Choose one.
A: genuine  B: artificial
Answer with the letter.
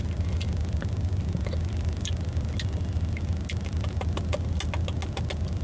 A